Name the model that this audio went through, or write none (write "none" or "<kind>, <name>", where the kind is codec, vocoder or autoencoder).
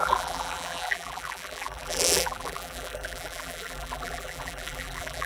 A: vocoder, BigVGAN v2